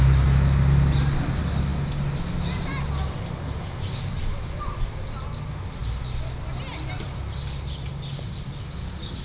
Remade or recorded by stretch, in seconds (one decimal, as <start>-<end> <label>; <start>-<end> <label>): 0.0-9.2 recorded